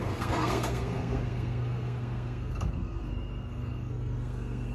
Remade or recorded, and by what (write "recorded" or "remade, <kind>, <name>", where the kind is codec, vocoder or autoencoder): remade, codec, SNAC